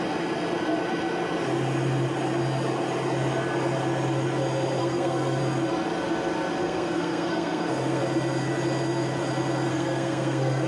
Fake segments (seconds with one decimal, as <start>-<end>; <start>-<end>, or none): 4.8-5.4; 6.6-8.0; 9.7-10.7